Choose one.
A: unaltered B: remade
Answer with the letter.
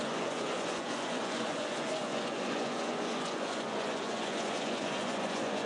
B